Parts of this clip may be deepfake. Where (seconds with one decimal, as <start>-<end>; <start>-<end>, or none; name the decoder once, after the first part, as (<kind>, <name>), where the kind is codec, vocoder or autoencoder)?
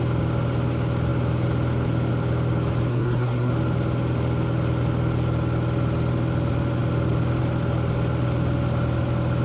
2.9-3.5 (codec, SNAC)